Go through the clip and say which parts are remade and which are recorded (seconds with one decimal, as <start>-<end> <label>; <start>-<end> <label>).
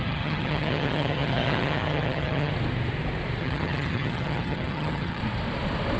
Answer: 0.0-2.5 remade; 2.5-3.4 recorded; 3.4-5.2 remade; 5.2-6.0 recorded